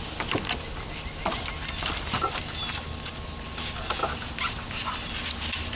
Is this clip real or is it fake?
real